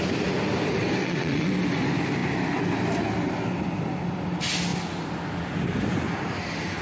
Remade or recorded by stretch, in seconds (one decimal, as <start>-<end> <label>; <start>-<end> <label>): 0.0-1.0 recorded; 1.0-1.5 remade; 1.5-6.8 recorded